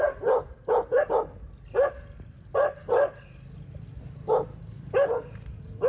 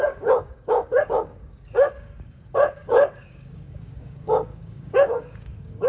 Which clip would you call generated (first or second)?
second